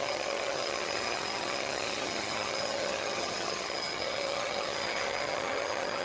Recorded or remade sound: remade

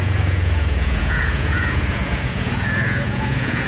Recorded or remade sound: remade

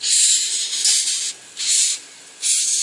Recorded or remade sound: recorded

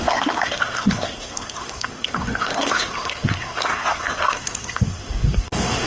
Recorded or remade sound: remade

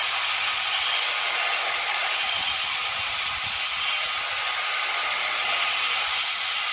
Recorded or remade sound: recorded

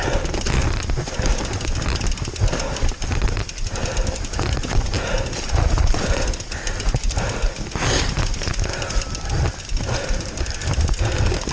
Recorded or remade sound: recorded